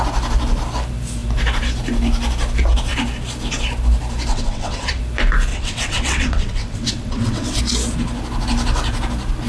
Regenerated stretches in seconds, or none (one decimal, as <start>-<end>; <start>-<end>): 4.3-5.0; 5.5-7.6